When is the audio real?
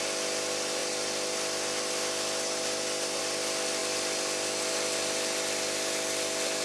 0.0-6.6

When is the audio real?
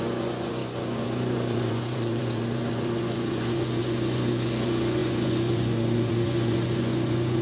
none